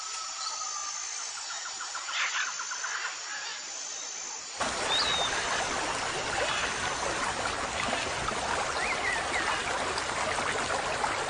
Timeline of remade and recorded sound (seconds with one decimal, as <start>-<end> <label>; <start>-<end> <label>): 0.0-11.3 recorded

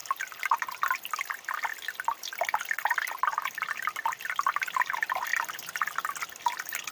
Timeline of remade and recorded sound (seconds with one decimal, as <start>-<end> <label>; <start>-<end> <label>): 0.0-1.1 remade; 1.1-6.9 recorded

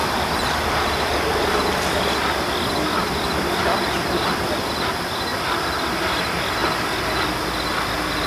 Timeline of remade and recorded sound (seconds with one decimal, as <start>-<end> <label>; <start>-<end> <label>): 0.0-4.8 remade; 4.8-6.6 recorded; 6.6-7.2 remade; 7.2-8.3 recorded

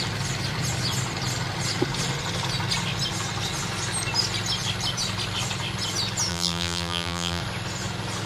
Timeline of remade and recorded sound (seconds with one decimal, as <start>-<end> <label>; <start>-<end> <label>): 0.0-6.3 recorded; 6.3-7.4 remade; 7.4-8.3 recorded

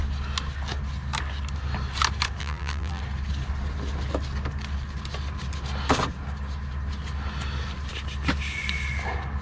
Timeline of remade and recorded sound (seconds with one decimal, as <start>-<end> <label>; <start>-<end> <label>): 0.0-2.4 recorded; 2.4-3.0 remade; 3.0-9.4 recorded

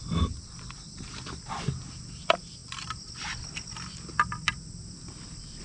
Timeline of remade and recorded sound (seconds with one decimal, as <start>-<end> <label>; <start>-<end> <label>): 0.0-2.6 remade; 2.6-5.6 recorded

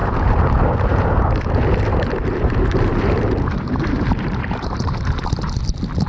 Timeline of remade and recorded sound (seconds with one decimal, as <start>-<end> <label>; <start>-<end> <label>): 0.0-1.3 remade; 1.3-1.9 recorded; 1.9-5.6 remade; 5.6-6.1 recorded

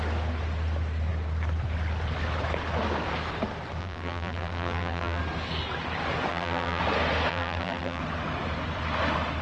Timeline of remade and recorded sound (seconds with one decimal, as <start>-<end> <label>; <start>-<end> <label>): 0.0-3.8 recorded; 3.8-5.2 remade; 5.2-6.3 recorded; 6.3-6.8 remade; 6.8-7.3 recorded; 7.3-8.0 remade; 8.0-9.4 recorded